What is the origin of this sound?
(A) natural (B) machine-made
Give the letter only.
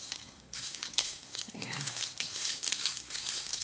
B